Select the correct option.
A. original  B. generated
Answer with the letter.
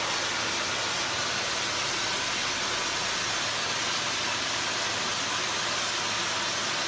A